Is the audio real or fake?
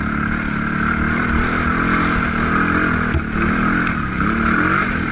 real